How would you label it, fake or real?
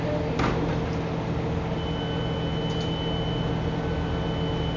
real